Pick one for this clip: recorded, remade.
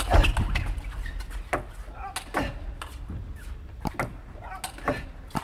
recorded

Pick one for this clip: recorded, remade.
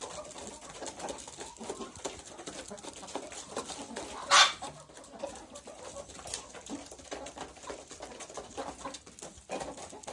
recorded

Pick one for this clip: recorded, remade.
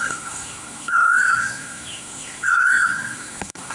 remade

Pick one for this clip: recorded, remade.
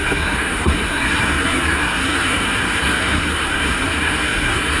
remade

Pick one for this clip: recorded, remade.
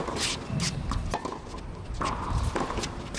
recorded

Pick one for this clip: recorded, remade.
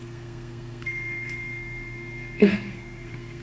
remade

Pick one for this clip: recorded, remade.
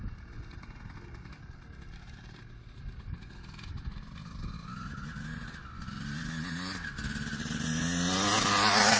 recorded